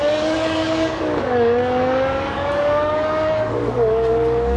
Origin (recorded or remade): remade